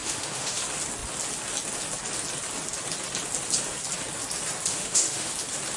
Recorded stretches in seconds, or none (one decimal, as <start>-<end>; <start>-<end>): 0.6-4.7; 5.3-5.8